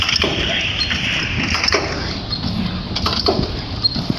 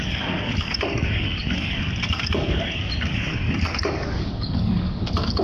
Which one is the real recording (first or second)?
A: first